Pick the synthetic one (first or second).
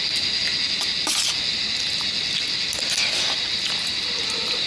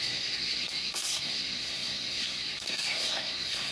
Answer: second